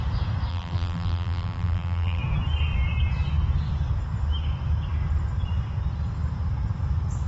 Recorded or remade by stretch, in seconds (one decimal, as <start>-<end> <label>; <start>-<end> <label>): 0.0-0.5 recorded; 0.5-2.2 remade; 2.2-7.3 recorded